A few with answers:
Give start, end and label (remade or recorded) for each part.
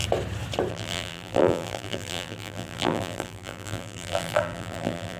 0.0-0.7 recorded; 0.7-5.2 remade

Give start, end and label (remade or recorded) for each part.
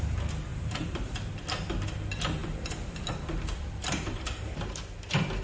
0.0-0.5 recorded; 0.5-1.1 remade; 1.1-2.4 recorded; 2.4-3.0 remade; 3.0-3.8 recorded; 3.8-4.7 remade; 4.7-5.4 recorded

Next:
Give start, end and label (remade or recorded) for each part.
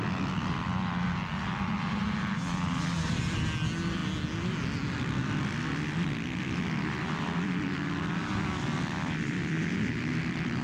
0.0-10.6 recorded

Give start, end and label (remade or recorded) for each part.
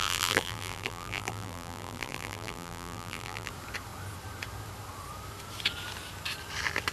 0.0-3.5 remade; 3.5-6.9 recorded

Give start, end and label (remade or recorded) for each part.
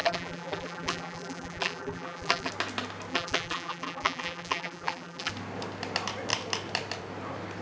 0.0-2.5 remade; 2.5-3.1 recorded; 3.1-5.3 remade; 5.3-7.6 recorded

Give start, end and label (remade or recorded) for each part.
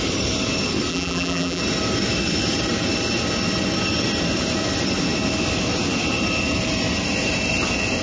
0.0-0.9 recorded; 0.9-1.6 remade; 1.6-8.0 recorded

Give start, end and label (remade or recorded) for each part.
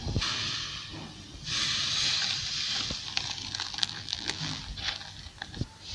0.0-3.8 recorded; 3.8-4.6 remade; 4.6-5.9 recorded